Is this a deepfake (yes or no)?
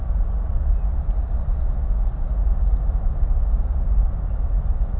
no